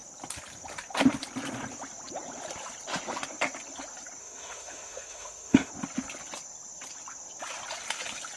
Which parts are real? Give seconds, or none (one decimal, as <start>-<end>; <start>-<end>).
0.0-4.2; 5.7-8.4